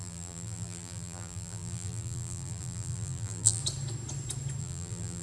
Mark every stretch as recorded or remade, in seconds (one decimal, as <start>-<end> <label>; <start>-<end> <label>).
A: 0.0-3.6 remade; 3.6-4.6 recorded; 4.6-5.2 remade